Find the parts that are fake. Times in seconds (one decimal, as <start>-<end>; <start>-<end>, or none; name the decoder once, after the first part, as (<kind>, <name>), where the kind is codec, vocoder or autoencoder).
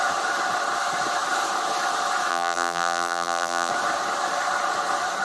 2.3-3.7 (vocoder, BigVGAN v2)